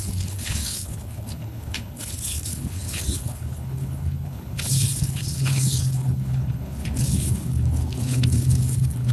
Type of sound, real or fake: fake